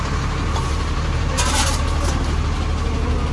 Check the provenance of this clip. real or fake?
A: real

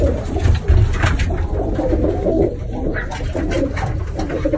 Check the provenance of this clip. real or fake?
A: real